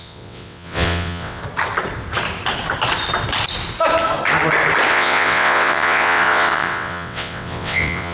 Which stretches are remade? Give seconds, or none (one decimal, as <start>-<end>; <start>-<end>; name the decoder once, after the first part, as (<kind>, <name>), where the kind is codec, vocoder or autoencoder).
0.0-1.4 (vocoder, WaveNeXt); 4.9-8.1